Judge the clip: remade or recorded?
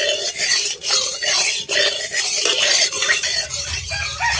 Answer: recorded